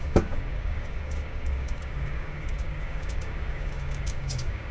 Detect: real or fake fake